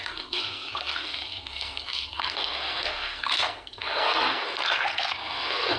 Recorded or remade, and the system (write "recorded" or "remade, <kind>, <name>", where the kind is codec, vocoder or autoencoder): remade, codec, SNAC